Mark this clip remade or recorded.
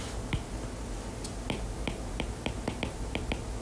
recorded